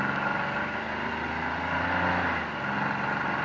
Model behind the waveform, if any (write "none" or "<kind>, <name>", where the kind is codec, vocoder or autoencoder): none